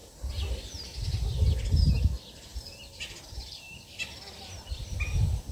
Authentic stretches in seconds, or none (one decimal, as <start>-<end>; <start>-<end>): 0.0-2.5; 4.8-5.5